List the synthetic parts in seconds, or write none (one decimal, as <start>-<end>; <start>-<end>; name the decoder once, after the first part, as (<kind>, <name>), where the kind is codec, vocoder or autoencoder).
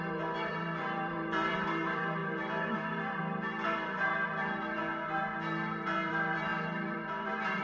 0.0-4.8 (vocoder, BigVGAN v2); 6.1-7.6